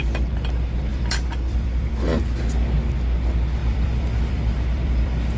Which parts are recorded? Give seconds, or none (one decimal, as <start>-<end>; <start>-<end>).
0.0-0.9; 1.9-3.6

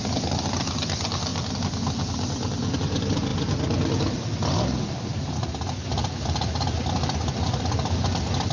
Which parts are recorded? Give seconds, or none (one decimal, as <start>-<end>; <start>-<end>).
0.0-8.5

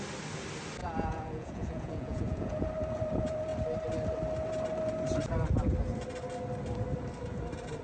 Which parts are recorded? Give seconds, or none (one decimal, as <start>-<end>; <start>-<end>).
0.0-0.8; 2.7-7.8

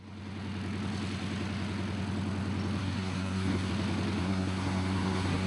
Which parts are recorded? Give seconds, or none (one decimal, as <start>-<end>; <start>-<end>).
0.0-2.8; 3.7-4.2